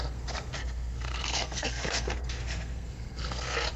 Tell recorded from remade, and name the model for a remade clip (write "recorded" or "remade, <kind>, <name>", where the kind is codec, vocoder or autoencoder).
remade, codec, SNAC